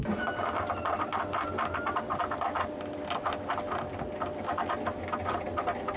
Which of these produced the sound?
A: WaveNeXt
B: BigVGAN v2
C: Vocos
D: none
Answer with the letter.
D